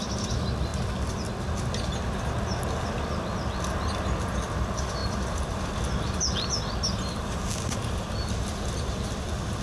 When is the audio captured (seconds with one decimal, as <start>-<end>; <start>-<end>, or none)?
0.0-9.6